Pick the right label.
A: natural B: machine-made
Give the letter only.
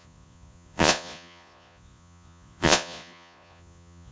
B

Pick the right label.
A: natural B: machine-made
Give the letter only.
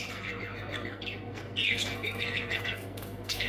B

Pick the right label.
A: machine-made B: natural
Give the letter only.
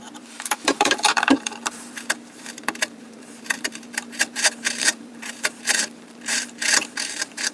A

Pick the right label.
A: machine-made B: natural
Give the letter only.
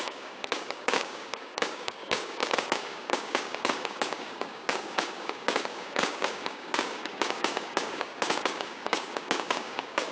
A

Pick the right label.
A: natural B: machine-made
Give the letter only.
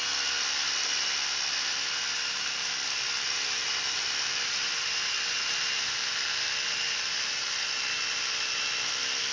A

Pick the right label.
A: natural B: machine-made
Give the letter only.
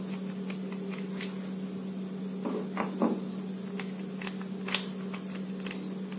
A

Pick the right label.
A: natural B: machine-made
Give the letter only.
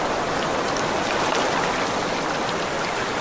A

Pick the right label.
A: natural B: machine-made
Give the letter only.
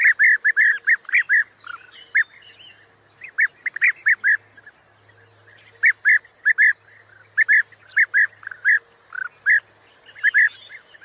A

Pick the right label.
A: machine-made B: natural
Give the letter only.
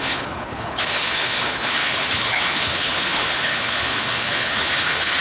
A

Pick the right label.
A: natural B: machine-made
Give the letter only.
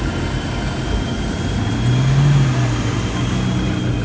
A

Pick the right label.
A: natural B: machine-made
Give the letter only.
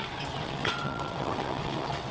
B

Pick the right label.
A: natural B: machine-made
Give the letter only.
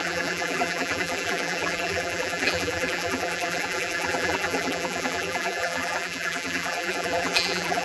B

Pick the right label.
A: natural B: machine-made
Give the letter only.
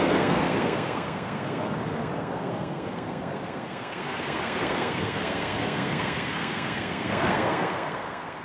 B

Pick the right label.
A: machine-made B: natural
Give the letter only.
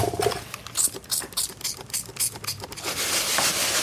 B